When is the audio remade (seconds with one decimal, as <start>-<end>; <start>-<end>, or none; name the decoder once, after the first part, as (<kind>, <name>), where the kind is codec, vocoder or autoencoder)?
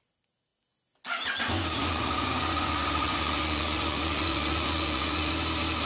1.8-5.3 (vocoder, Vocos)